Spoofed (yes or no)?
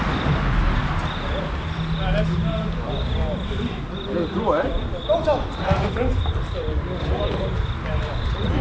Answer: no